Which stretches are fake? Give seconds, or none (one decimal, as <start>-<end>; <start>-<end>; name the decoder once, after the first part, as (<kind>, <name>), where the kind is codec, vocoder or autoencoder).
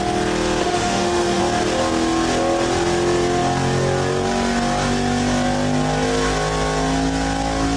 0.6-1.4 (autoencoder, DAC-VAE)